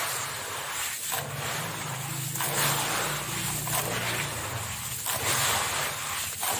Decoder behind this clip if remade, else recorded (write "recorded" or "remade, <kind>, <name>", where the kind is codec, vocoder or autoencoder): recorded